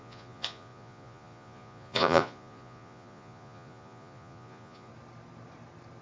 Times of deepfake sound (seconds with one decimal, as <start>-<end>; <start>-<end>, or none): 0.0-4.9